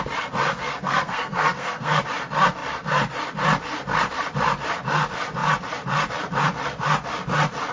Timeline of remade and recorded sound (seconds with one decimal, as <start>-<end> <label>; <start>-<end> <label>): 0.0-0.5 recorded; 0.5-2.0 remade; 2.0-7.7 recorded